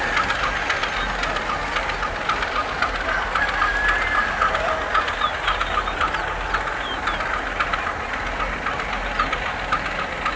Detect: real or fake real